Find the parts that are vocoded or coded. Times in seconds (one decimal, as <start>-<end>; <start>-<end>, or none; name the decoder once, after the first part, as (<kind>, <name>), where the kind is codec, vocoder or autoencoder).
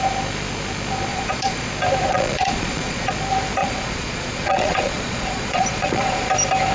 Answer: 1.1-1.7 (vocoder, Vocos); 2.1-3.1; 3.6-6.3